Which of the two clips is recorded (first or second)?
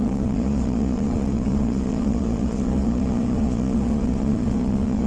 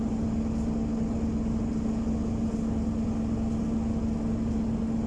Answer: second